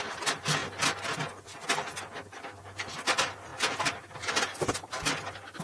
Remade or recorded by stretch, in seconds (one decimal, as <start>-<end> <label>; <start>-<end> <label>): 0.0-5.6 recorded